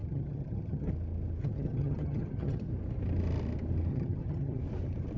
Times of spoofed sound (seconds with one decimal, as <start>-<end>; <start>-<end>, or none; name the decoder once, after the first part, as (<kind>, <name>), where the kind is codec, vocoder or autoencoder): 0.0-0.9 (vocoder, HiFi-GAN); 1.4-2.7; 3.9-4.6